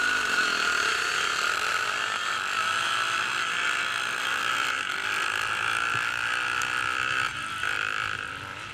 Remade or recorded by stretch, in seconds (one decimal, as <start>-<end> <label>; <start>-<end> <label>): 0.0-1.7 remade; 1.7-6.6 recorded; 6.6-7.3 remade; 7.3-8.7 recorded